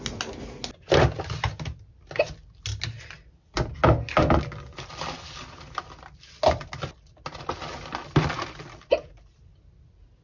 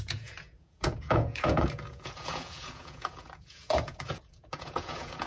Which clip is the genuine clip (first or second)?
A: first